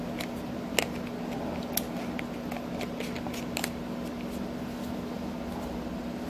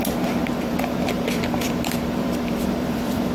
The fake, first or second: second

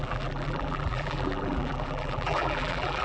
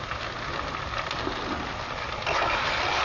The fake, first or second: first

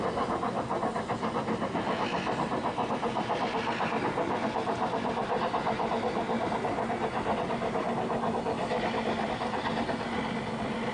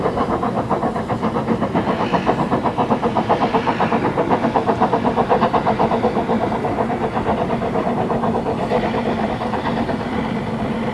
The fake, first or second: second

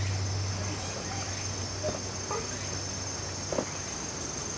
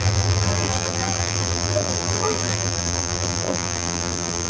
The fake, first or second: second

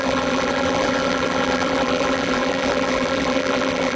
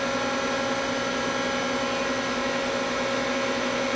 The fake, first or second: first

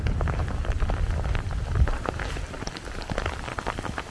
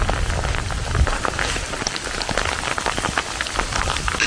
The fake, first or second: first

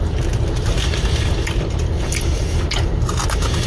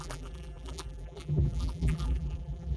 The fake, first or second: second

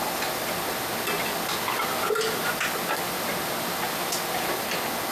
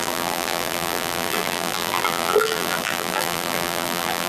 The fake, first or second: second